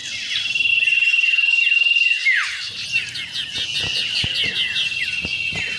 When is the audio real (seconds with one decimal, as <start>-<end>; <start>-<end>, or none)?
0.0-5.8